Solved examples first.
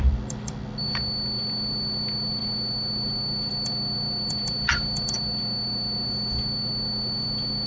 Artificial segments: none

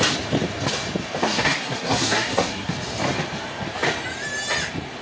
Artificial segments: 1.2-2.7 (codec, SNAC)

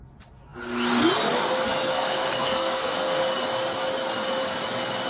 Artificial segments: 1.9-3.2 (codec, SNAC)

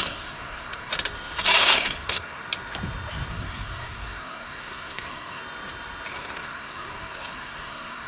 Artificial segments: 0.0-0.9 (codec, SNAC); 1.6-2.4; 3.3-5.4; 6.1-8.1

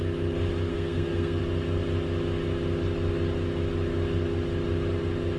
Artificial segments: 0.7-1.4 (codec, SNAC)

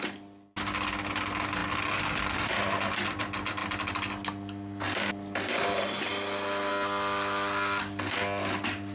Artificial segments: none